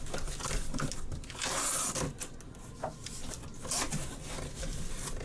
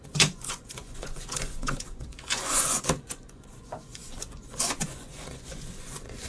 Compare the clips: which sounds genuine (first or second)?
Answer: first